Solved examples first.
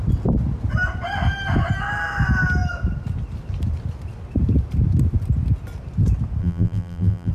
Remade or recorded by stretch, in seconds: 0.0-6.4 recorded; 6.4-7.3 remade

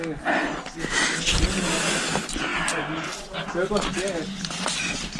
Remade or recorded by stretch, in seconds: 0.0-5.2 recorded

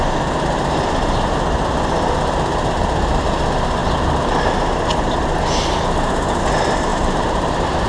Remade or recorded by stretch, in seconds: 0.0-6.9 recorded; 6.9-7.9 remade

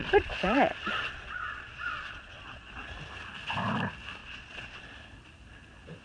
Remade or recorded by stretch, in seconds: 0.0-2.9 remade; 2.9-4.2 recorded; 4.2-4.8 remade; 4.8-6.0 recorded

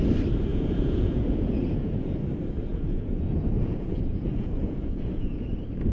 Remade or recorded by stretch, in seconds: 0.0-0.5 recorded; 0.5-2.2 remade; 2.2-2.7 recorded; 2.7-5.5 remade; 5.5-5.9 recorded

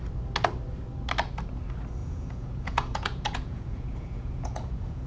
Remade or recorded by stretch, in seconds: 0.0-2.0 recorded; 2.0-5.1 remade